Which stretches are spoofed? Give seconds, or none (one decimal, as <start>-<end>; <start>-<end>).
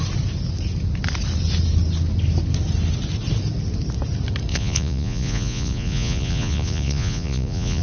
4.5-7.8